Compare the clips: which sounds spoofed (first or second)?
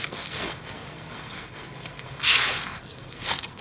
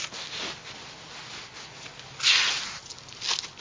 first